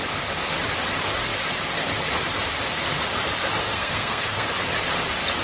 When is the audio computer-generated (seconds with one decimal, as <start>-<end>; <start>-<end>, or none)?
3.6-4.5